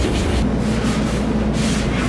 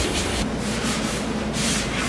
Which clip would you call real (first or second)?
first